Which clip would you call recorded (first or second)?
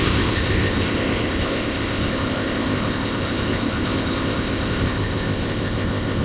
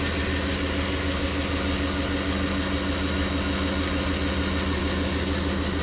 second